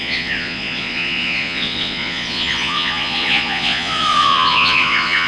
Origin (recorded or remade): remade